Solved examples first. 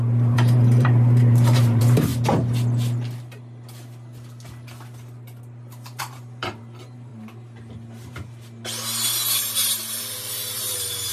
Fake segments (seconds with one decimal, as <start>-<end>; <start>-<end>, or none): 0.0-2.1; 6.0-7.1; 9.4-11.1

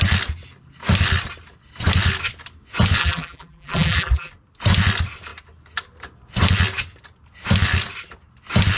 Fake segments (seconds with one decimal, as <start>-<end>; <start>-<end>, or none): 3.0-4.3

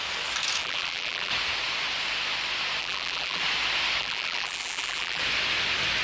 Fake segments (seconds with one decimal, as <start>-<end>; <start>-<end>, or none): 0.6-1.3; 2.8-3.4; 4.0-5.2

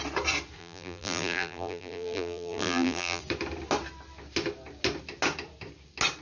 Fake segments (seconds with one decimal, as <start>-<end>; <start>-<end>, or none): 0.6-3.2

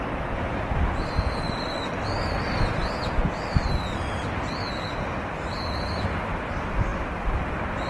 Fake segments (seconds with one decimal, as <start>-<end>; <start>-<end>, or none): 6.9-7.9

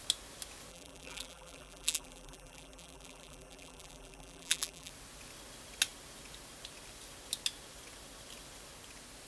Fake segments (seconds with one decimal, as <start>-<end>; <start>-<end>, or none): 0.7-4.9

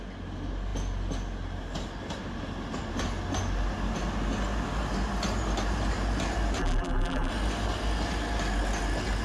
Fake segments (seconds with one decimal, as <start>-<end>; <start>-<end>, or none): 6.6-7.3